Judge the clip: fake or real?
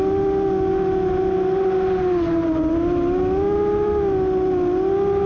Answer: real